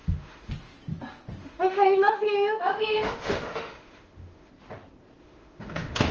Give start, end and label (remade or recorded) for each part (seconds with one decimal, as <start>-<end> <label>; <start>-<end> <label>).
0.0-0.5 remade; 0.5-1.4 recorded; 1.4-4.5 remade; 4.5-5.2 recorded; 5.2-6.1 remade